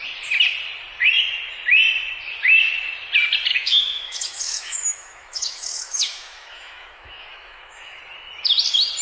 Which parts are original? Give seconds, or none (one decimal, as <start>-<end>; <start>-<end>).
0.0-3.5; 8.0-9.0